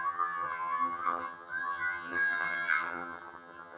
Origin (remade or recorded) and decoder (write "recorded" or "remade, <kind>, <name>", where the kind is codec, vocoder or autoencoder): remade, vocoder, HiFi-GAN